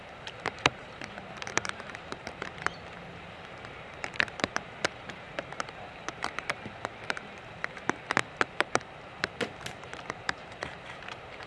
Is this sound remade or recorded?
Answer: remade